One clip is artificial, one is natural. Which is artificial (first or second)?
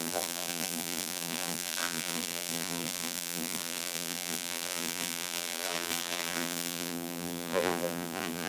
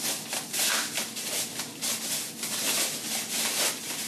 first